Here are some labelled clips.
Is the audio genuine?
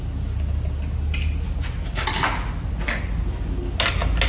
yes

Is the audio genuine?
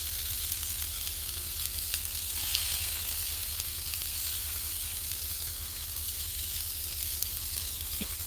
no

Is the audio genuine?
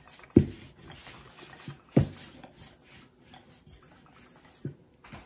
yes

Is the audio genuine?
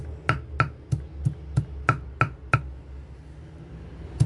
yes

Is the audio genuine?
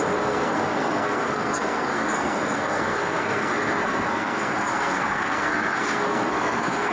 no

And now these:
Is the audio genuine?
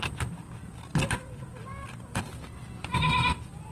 yes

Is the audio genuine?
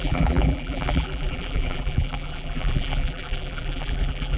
no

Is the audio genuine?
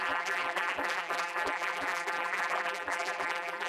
no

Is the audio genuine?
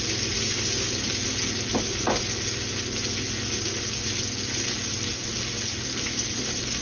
yes